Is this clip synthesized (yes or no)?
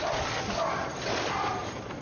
no